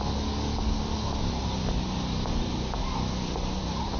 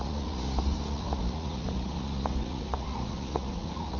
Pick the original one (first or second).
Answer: first